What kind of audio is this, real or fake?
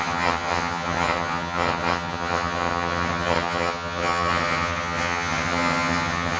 fake